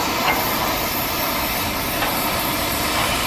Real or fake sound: fake